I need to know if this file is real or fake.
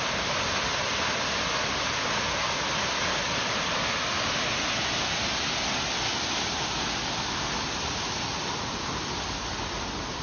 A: real